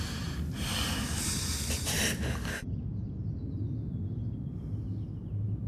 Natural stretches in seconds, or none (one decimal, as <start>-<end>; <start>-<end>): 0.0-5.7